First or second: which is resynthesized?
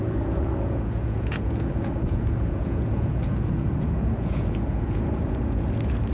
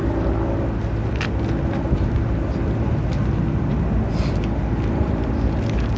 first